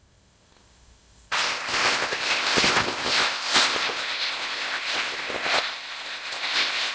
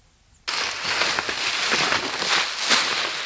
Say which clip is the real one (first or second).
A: second